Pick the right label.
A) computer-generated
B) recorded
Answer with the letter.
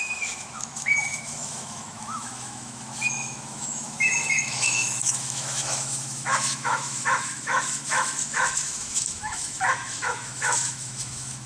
A